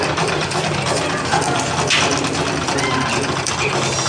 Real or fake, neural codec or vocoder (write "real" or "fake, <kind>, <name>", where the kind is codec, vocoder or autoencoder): real